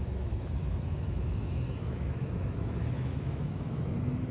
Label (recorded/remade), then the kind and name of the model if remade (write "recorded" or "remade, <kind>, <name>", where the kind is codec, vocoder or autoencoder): remade, autoencoder, DAC-VAE